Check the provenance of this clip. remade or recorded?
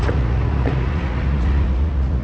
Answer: remade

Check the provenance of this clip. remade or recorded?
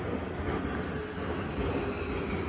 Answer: recorded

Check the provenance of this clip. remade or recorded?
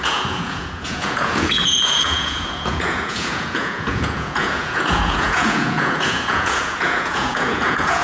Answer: remade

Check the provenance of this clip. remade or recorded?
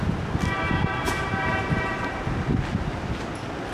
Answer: recorded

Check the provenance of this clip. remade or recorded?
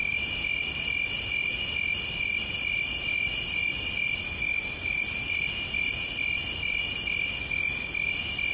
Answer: recorded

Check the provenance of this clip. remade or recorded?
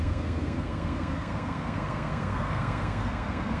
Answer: remade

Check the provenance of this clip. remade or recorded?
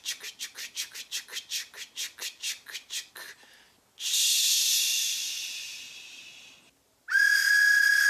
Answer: recorded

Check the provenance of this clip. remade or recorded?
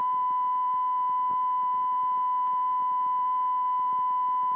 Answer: recorded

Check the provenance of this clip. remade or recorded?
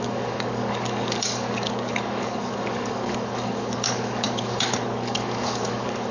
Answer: remade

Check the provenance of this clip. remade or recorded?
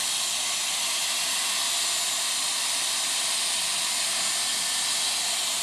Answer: recorded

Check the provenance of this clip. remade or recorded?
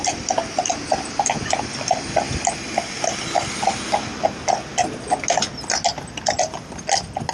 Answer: recorded